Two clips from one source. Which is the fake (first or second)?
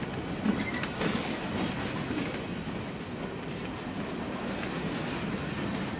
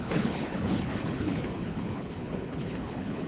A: second